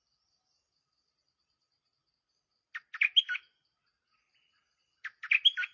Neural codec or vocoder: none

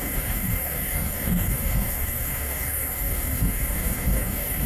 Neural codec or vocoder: codec, DAC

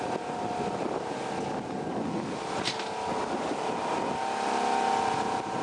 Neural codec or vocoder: none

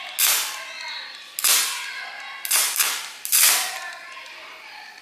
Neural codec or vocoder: none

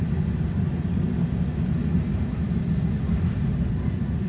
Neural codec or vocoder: none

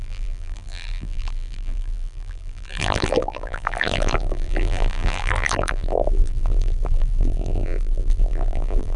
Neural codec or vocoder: vocoder, BigVGAN v2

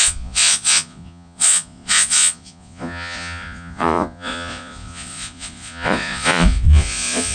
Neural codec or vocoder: vocoder, Vocos